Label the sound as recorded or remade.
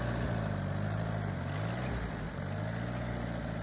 recorded